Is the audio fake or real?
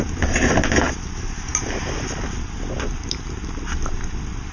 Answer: real